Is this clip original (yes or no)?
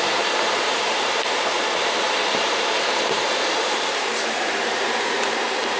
no